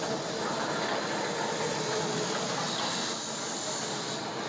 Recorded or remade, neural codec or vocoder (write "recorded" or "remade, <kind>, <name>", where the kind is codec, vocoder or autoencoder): recorded